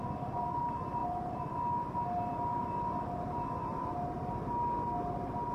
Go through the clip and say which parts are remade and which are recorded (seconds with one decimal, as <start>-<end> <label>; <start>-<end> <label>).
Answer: 0.0-5.5 recorded